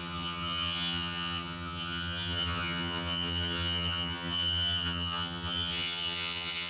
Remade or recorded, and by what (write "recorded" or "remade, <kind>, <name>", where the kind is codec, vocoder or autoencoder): remade, vocoder, HiFi-GAN